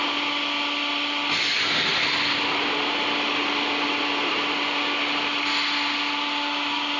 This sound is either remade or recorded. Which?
recorded